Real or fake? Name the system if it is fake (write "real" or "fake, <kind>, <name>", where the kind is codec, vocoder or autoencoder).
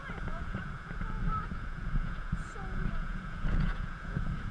fake, vocoder, Vocos